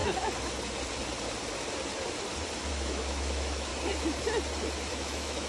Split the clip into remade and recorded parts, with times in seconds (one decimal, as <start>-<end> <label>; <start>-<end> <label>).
0.0-2.7 recorded; 2.7-3.7 remade; 3.7-4.9 recorded; 4.9-5.5 remade

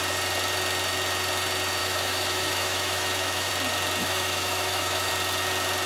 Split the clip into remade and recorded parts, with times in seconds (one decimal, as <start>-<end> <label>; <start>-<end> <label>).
0.0-1.8 recorded; 1.8-3.5 remade; 3.5-4.0 recorded; 4.0-5.1 remade; 5.1-5.9 recorded

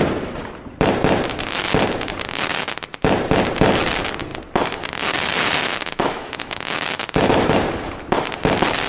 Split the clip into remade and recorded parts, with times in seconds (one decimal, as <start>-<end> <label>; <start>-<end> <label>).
0.0-5.7 recorded; 5.7-7.5 remade; 7.5-8.9 recorded

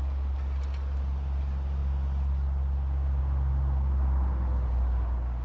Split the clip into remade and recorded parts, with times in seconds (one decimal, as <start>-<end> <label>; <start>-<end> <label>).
0.0-5.4 recorded